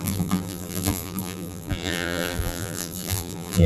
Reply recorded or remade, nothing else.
remade